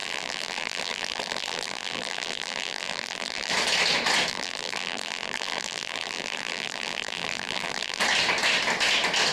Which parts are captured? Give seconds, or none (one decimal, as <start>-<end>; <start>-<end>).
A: 3.5-4.3; 8.0-9.3